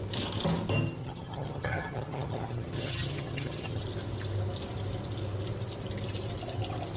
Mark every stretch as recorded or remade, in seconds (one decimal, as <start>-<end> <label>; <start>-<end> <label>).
0.0-1.0 recorded; 1.0-3.8 remade; 3.8-7.0 recorded